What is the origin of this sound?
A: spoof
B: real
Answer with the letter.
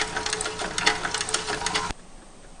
B